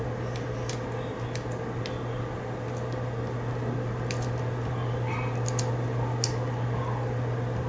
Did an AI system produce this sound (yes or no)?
no